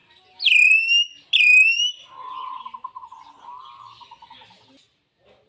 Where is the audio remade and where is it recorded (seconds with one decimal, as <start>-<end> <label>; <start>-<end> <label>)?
0.0-5.5 recorded